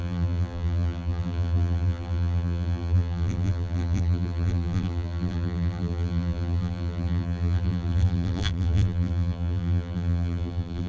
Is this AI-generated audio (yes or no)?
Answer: yes